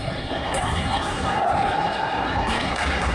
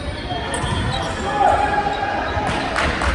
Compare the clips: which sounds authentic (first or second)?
second